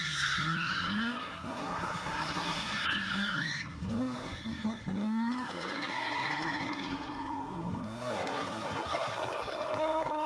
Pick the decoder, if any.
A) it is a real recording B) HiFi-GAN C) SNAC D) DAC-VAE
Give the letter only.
C